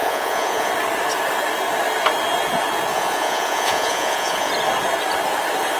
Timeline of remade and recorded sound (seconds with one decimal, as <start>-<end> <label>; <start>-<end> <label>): 0.0-0.7 remade; 0.7-2.9 recorded; 2.9-4.5 remade; 4.5-5.8 recorded